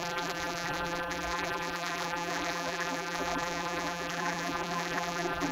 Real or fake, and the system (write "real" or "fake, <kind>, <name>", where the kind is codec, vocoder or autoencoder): fake, vocoder, BigVGAN v2